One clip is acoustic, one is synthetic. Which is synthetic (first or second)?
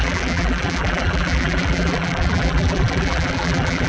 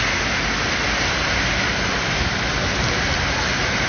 first